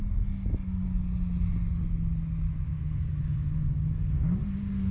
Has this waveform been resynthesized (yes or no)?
no